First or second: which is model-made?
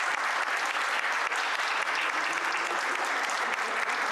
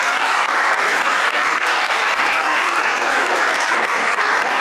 second